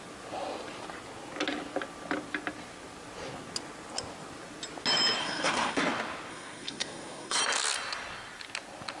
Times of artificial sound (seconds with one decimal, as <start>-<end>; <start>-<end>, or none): 5.2-5.8; 6.3-7.4